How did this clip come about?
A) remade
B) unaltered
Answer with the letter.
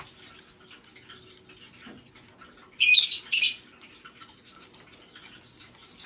B